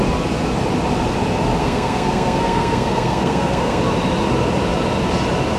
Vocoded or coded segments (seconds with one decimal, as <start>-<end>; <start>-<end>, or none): 1.6-3.8